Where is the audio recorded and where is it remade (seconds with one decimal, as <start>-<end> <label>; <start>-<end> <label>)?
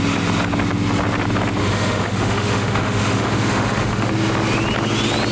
0.0-1.6 recorded; 1.6-4.1 remade; 4.1-5.3 recorded